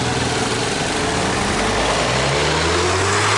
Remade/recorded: recorded